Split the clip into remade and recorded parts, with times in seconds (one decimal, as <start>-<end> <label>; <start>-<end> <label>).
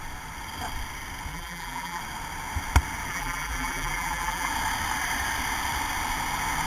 0.0-1.3 recorded; 1.3-2.0 remade; 2.0-3.1 recorded; 3.1-4.5 remade; 4.5-6.7 recorded